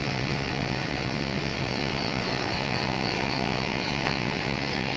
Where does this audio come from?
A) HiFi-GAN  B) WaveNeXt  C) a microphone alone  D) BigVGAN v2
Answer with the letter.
B